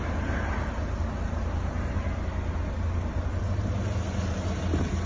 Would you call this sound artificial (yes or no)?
no